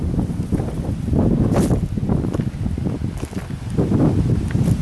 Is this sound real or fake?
real